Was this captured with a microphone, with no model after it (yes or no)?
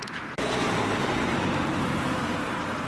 yes